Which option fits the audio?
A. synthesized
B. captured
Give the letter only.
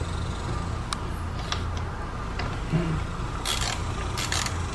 B